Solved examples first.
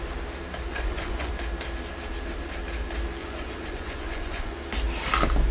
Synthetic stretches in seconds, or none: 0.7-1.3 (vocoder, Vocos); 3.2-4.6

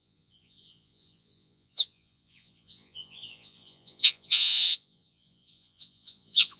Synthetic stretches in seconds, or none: 0.0-6.6 (vocoder, Vocos)